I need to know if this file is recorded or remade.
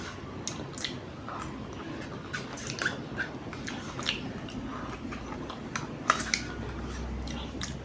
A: recorded